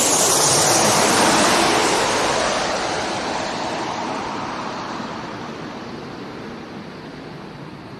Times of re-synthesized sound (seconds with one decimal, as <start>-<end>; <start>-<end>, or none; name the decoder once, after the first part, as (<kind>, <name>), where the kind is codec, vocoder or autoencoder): 1.8-6.5 (vocoder, BigVGAN v2)